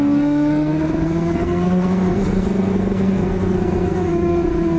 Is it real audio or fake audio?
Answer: fake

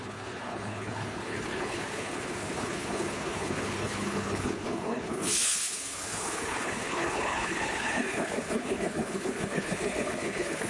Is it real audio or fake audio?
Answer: fake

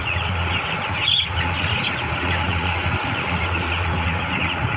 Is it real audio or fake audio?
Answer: fake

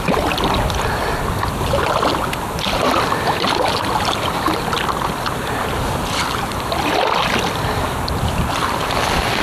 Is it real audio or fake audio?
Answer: real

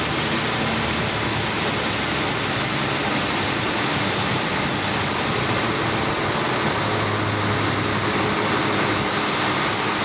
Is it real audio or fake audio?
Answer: real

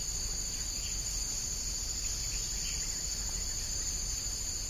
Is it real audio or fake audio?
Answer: real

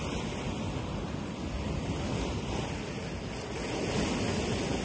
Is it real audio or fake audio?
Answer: real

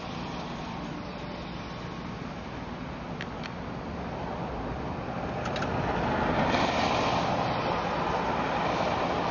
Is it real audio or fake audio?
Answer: real